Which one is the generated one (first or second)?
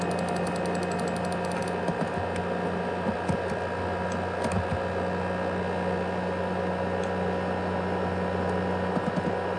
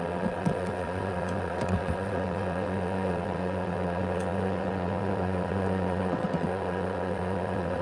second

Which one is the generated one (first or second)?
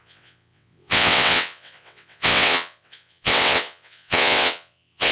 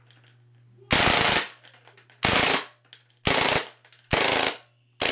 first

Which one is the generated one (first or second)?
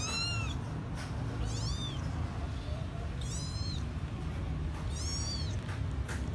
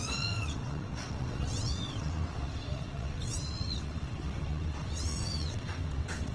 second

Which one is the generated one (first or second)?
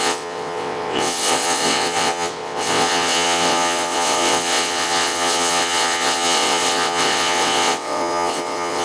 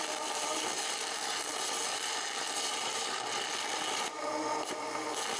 first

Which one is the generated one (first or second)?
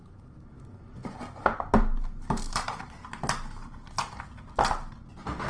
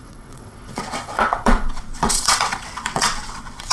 second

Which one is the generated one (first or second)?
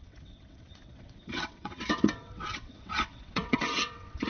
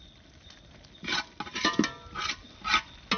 first